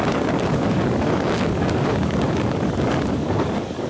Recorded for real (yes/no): no